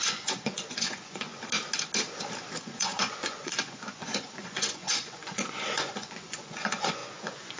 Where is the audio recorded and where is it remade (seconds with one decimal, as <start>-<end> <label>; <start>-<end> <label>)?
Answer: 0.0-1.3 remade; 1.3-2.6 recorded; 2.6-7.6 remade